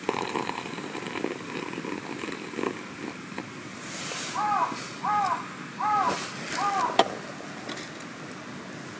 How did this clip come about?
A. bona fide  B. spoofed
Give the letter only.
A